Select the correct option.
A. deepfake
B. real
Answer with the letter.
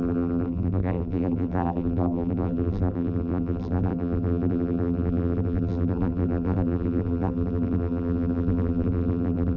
A